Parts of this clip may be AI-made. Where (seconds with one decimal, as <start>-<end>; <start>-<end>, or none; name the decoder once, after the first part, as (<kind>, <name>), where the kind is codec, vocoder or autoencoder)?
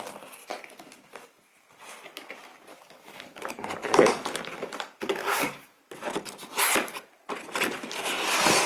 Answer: 2.7-4.4 (codec, DAC); 5.2-5.8